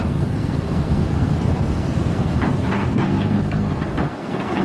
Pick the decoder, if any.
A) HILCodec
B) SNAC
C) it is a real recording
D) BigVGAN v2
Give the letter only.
B